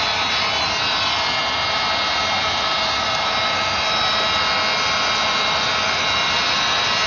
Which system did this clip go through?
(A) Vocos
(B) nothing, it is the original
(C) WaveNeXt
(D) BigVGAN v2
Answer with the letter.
B